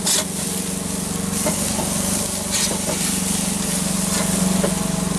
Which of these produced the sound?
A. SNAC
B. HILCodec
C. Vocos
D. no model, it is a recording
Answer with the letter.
D